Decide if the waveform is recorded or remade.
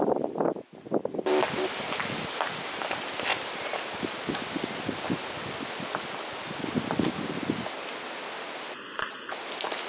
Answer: recorded